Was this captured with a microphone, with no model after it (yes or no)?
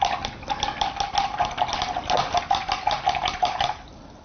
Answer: yes